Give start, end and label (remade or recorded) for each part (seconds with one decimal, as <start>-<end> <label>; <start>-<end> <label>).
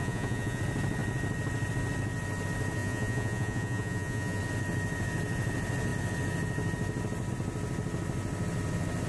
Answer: 0.0-0.6 remade; 0.6-2.8 recorded; 2.8-4.4 remade; 4.4-9.1 recorded